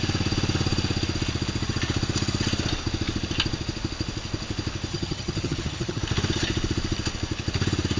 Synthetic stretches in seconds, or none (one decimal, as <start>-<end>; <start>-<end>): 4.9-6.0